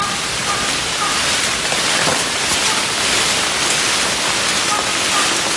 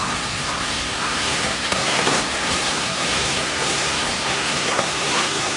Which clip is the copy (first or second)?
second